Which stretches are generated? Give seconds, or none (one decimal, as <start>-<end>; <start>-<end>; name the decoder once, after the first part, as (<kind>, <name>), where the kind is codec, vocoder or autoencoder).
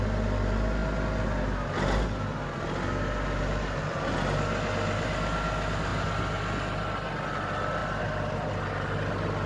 7.8-8.5 (vocoder, BigVGAN v2)